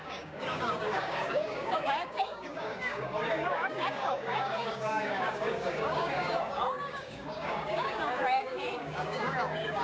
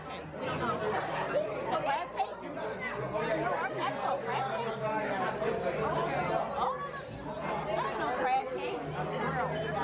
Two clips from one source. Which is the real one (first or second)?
second